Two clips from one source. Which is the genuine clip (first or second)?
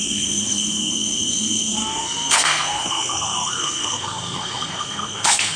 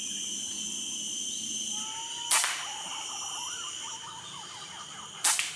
second